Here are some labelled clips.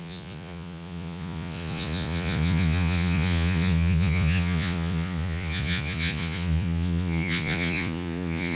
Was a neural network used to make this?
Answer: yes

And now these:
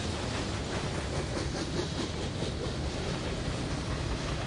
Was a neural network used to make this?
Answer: no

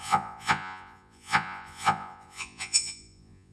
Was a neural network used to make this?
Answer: yes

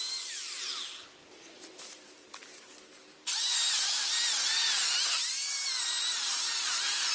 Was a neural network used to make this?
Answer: no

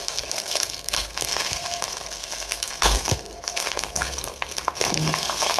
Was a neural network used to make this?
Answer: yes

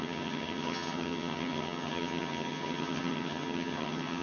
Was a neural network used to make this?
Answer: yes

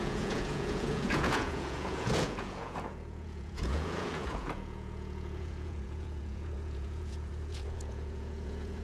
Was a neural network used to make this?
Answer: yes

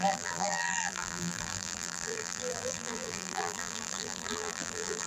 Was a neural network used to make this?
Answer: yes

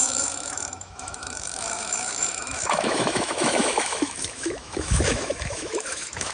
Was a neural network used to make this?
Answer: yes